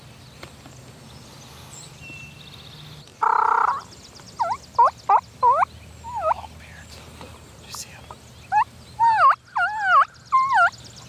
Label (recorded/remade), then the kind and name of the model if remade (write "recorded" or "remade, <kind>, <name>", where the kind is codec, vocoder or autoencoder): recorded